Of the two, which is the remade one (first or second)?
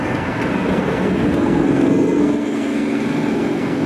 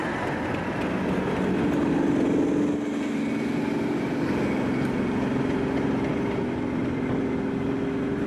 first